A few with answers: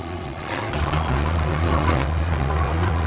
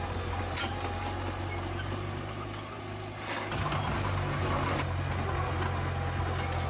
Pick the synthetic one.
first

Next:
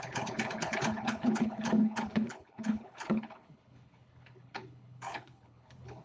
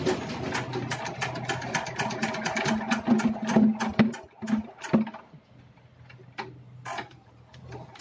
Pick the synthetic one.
first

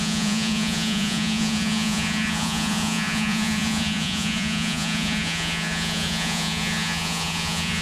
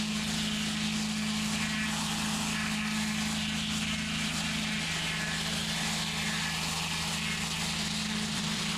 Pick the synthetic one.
first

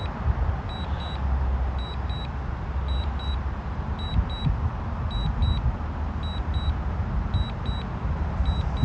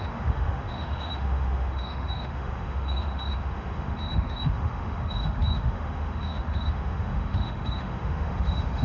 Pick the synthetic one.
second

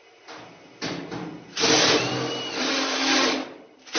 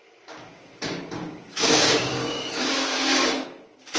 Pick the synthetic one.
second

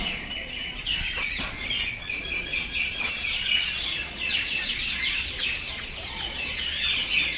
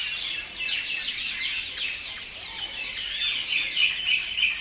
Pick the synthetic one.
first